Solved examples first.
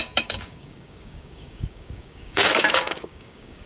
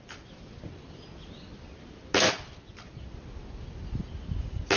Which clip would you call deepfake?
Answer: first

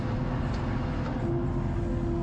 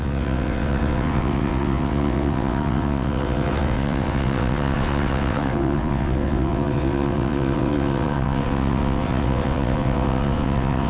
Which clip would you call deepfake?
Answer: second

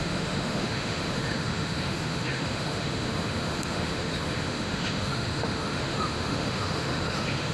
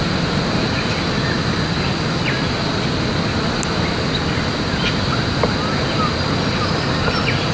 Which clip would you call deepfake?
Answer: first